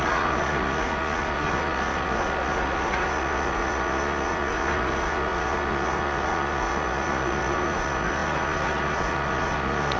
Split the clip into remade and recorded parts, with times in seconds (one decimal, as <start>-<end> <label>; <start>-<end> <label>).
0.0-10.0 remade